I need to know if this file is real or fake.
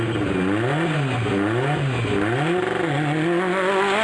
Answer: real